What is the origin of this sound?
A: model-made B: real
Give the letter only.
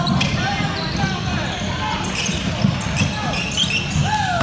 B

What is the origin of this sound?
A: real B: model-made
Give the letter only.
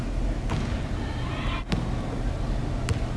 A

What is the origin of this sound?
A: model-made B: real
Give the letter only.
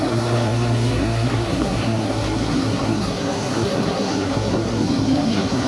A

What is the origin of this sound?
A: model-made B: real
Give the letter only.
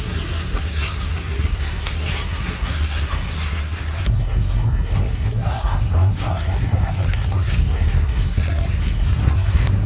A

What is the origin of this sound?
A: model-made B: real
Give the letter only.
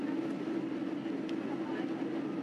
B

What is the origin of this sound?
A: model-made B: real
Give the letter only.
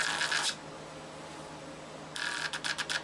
B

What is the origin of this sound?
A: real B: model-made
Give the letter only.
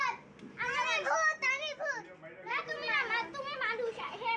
A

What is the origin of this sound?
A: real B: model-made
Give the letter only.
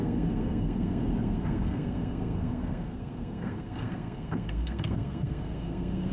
B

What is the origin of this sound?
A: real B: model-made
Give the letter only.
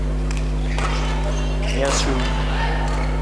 A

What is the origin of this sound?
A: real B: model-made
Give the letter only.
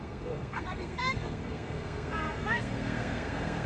B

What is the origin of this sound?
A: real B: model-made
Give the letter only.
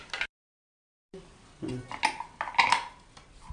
A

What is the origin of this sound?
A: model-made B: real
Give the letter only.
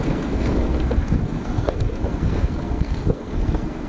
A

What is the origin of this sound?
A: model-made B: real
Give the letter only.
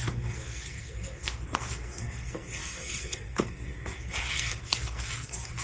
A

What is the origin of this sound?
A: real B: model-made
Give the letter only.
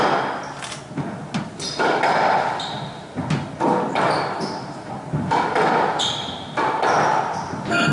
A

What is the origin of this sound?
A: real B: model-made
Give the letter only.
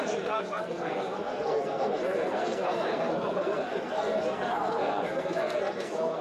B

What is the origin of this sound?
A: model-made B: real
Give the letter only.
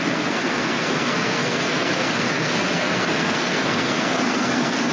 A